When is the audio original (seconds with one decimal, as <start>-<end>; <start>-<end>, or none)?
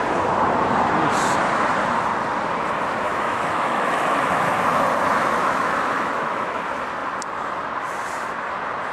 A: 0.0-3.1; 4.5-5.4; 6.6-8.9